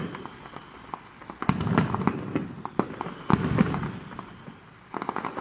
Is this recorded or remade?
recorded